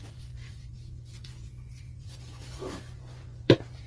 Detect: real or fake fake